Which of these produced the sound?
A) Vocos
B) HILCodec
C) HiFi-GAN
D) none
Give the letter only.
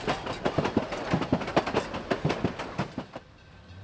D